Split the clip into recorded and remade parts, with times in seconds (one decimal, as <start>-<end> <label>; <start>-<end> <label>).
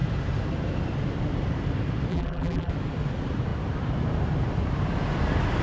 0.0-2.1 recorded; 2.1-2.7 remade; 2.7-5.6 recorded